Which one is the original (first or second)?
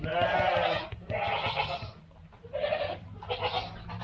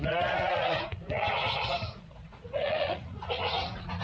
first